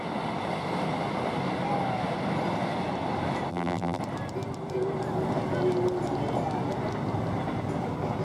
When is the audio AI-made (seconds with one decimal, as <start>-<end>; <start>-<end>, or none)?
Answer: 3.5-4.0